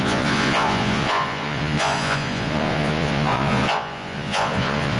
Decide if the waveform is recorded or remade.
remade